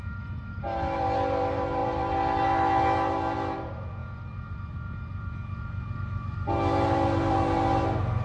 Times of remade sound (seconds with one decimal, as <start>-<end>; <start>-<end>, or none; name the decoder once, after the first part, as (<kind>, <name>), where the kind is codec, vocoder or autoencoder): none